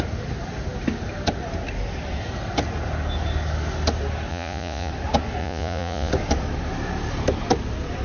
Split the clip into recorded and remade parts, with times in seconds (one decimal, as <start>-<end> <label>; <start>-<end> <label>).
0.0-4.3 recorded; 4.3-4.9 remade; 4.9-5.4 recorded; 5.4-6.1 remade; 6.1-8.0 recorded